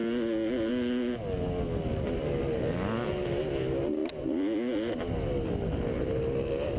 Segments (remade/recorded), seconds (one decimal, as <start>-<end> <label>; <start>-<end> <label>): 0.0-6.8 recorded